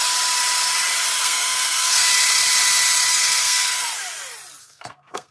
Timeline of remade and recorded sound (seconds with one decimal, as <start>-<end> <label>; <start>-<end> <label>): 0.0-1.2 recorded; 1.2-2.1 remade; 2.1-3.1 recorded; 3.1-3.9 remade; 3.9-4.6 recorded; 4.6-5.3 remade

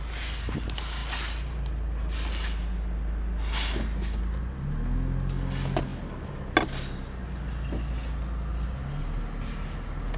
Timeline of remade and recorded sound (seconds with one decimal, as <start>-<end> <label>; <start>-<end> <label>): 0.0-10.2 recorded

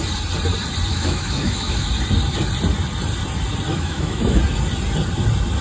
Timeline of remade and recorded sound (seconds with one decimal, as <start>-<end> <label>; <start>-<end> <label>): 0.0-0.9 recorded; 0.9-1.9 remade; 1.9-3.7 recorded; 3.7-4.4 remade; 4.4-5.6 recorded

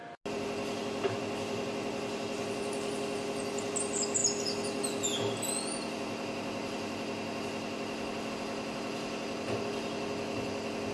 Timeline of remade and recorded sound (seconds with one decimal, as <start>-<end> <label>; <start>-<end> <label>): 0.0-10.9 recorded

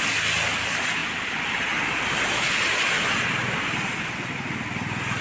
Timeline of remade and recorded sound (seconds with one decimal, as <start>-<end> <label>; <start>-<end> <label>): 0.0-1.0 recorded; 1.0-1.6 remade; 1.6-5.2 recorded

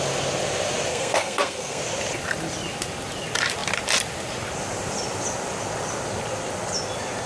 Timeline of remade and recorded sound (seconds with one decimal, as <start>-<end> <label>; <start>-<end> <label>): 0.0-0.9 recorded; 0.9-1.8 remade; 1.8-7.3 recorded